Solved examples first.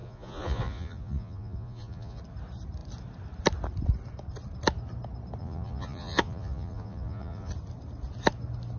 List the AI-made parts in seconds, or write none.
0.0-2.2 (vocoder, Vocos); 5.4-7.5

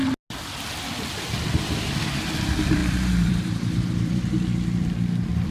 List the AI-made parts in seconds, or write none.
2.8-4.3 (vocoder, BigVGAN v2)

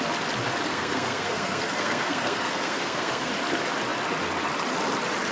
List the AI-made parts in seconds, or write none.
0.7-3.3 (codec, SNAC)